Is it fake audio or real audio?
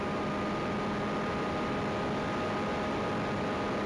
real